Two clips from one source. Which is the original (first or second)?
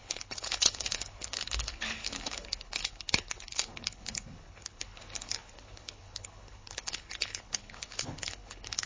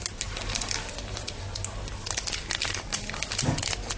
second